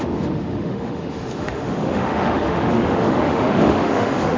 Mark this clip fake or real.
fake